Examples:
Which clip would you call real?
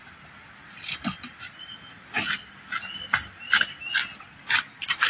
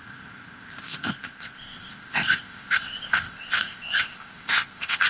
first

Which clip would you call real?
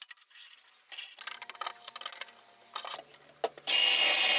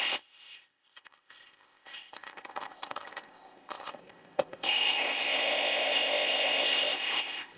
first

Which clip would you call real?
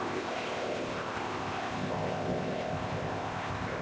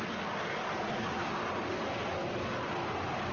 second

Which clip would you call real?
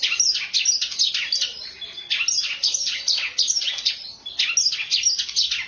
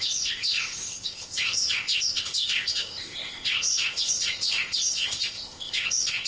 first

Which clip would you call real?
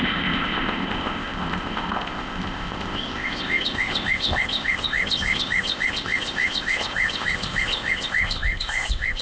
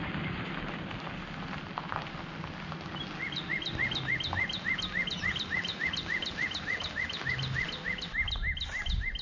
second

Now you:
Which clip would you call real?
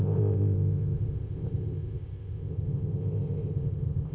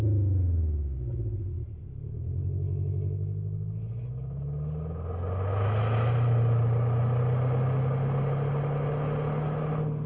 second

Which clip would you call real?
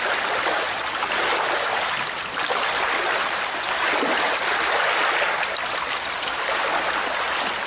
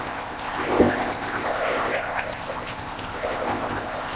first